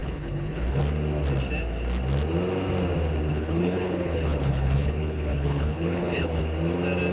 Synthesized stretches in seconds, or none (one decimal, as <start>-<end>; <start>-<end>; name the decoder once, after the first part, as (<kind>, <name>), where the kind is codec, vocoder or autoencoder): 0.0-0.8 (codec, HILCodec); 3.3-6.4